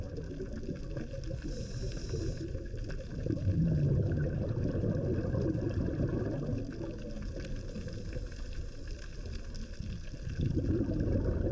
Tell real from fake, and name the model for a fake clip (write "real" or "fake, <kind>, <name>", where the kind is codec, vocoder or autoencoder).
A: real